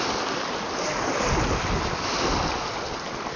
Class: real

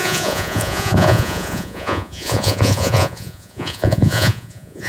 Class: fake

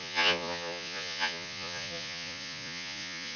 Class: fake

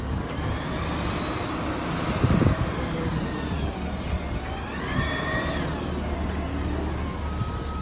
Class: real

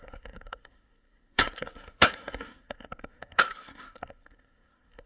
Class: fake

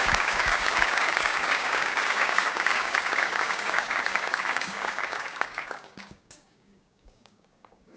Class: fake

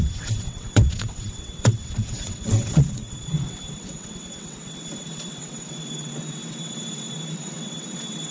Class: fake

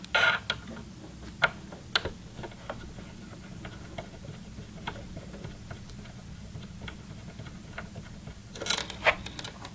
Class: real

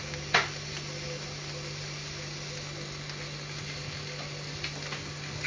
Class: real